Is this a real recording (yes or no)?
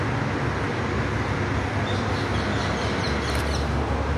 yes